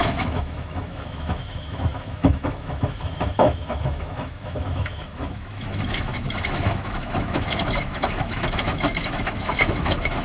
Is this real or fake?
fake